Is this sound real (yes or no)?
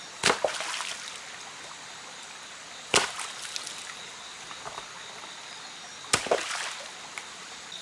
yes